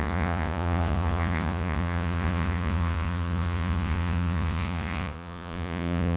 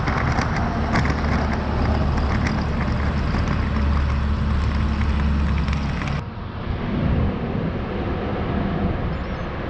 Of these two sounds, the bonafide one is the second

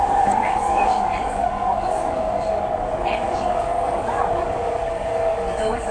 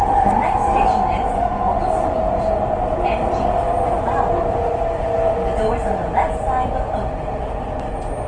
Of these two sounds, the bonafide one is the second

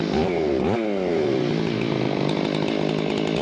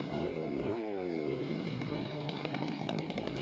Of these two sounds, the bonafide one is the first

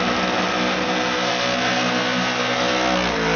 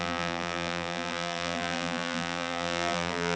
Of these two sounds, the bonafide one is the first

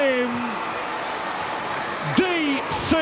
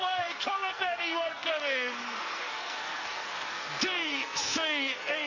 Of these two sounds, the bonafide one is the first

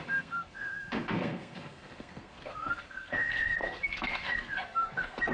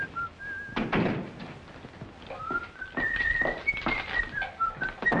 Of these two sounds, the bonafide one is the second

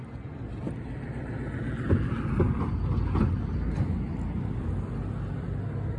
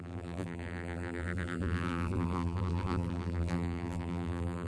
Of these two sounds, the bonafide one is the first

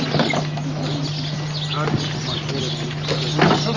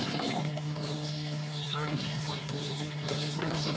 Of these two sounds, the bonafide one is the first